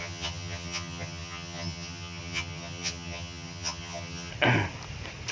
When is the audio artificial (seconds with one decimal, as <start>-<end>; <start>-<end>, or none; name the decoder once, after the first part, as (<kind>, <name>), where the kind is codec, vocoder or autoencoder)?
0.0-4.3 (vocoder, HiFi-GAN)